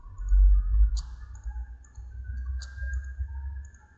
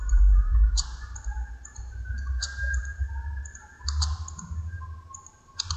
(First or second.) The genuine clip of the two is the first